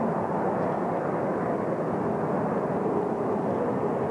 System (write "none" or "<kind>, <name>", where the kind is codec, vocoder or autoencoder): none